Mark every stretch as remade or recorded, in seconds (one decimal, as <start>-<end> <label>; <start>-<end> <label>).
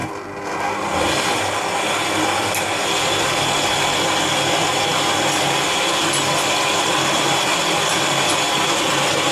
0.0-9.3 recorded